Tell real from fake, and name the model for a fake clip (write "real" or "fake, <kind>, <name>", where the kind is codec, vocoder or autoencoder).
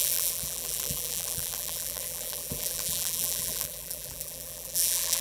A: fake, vocoder, BigVGAN v2